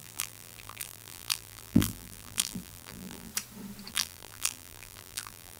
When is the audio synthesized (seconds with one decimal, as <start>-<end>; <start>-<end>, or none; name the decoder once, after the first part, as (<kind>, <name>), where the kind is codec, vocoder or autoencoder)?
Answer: 0.0-3.3 (vocoder, BigVGAN v2); 3.9-5.6